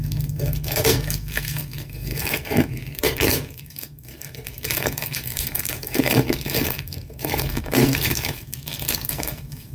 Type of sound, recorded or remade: remade